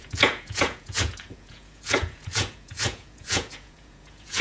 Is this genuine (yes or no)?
no